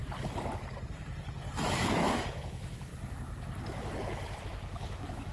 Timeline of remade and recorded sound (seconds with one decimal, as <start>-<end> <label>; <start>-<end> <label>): 0.0-1.6 recorded; 1.6-2.9 remade; 2.9-4.4 recorded; 4.4-5.3 remade